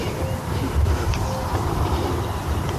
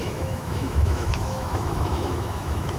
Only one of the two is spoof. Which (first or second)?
second